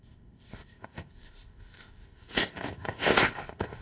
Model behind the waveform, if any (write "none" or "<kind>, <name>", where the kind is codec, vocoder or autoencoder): codec, ZipCodec